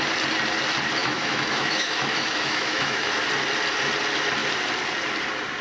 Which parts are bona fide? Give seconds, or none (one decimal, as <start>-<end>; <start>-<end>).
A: 0.0-1.0; 3.2-5.6